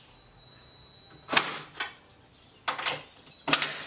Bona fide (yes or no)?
yes